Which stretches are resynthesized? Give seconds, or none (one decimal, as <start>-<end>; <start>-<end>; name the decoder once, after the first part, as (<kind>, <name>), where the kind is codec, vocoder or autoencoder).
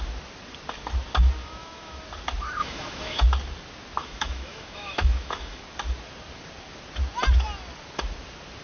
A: 1.4-2.0 (autoencoder, DAC-VAE); 2.6-3.2; 4.0-5.6